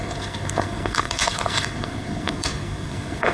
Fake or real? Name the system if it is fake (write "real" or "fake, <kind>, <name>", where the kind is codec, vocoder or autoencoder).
fake, codec, SNAC